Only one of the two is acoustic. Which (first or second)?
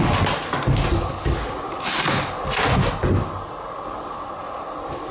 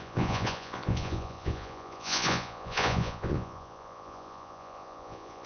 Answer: first